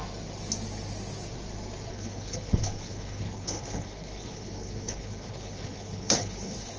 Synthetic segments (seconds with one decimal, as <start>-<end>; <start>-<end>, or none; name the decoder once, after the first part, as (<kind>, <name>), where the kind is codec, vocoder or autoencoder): 1.9-6.8 (codec, HILCodec)